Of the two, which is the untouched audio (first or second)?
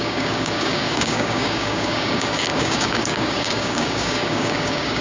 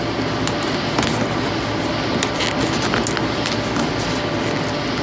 second